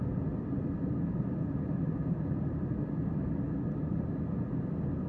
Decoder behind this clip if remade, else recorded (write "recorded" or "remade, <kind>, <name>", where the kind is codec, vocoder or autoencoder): recorded